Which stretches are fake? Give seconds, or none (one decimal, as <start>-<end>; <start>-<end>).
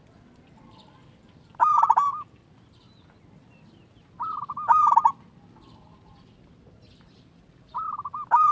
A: none